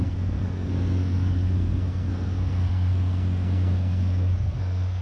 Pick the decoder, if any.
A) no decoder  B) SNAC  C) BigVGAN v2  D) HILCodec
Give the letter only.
B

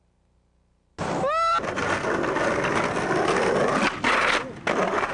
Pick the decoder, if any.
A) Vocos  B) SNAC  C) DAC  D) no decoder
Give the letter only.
D